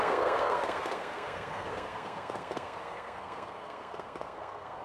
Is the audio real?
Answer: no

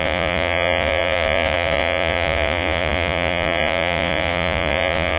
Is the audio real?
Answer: no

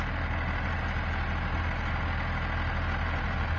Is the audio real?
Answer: yes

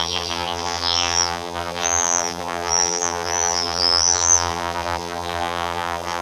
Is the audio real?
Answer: no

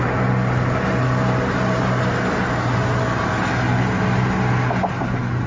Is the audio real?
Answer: yes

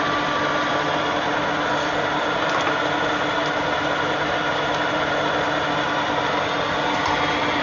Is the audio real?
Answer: yes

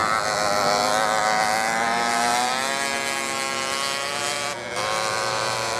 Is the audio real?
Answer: yes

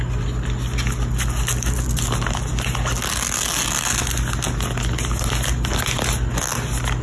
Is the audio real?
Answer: yes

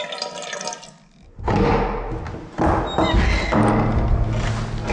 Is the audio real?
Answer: yes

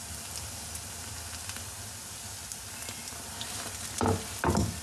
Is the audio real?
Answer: yes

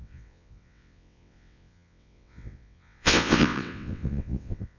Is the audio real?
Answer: no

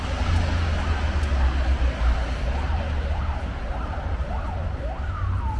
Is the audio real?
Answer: yes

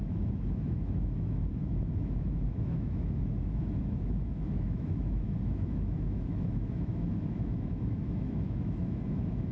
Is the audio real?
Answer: no